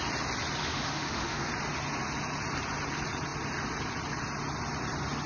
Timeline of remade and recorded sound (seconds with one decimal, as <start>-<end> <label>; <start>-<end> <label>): 0.0-0.6 recorded; 0.6-1.5 remade; 1.5-5.3 recorded